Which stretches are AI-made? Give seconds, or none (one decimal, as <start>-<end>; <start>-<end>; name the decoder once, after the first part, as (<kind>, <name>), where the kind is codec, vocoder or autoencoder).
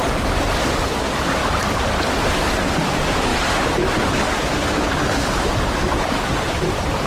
none